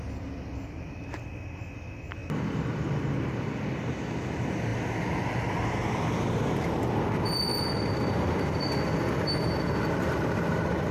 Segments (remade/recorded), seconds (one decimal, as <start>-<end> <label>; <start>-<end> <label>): 0.0-10.9 recorded